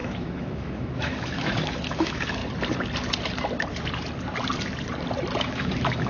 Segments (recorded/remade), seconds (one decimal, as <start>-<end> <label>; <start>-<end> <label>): 0.0-2.4 remade; 2.4-5.4 recorded; 5.4-6.1 remade